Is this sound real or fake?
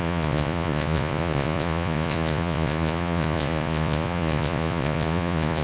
fake